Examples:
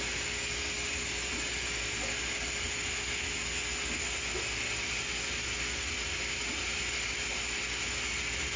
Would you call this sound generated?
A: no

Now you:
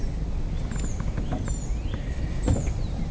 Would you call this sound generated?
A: no